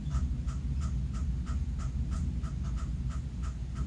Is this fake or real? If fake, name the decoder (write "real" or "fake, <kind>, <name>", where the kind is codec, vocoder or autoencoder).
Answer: real